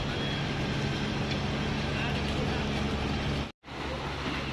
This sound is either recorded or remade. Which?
recorded